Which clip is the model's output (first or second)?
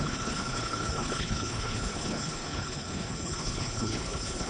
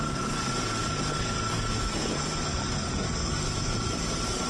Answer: first